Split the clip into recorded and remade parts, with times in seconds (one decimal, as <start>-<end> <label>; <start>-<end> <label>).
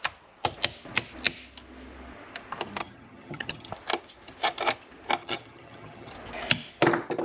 0.0-2.8 recorded; 2.8-3.7 remade; 3.7-5.2 recorded; 5.2-6.1 remade; 6.1-7.2 recorded